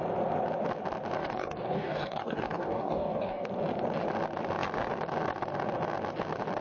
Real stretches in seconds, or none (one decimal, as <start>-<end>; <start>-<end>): 0.0-1.2; 3.5-6.6